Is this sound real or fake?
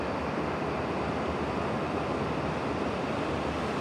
real